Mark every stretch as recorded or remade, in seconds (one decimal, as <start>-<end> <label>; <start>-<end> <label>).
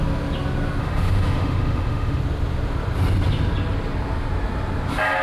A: 0.0-0.8 recorded; 0.8-2.2 remade; 2.2-5.2 recorded